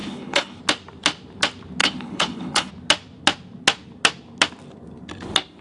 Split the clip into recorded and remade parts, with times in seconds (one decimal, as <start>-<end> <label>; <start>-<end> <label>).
0.0-0.6 remade; 0.6-1.8 recorded; 1.8-2.7 remade; 2.7-5.6 recorded